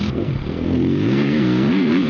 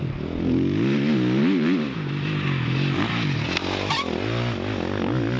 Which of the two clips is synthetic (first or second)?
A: first